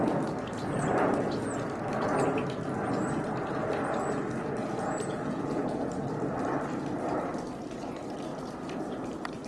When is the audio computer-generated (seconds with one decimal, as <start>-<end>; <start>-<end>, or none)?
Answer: 4.6-5.9